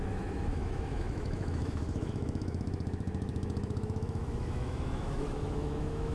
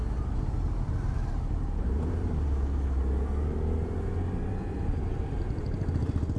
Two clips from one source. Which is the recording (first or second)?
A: second